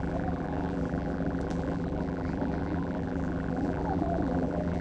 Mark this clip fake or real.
fake